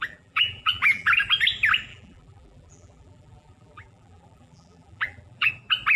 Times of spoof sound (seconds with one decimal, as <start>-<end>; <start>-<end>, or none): 0.0-1.1; 1.9-5.5